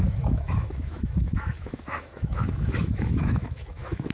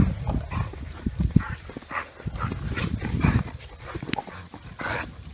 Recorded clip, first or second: second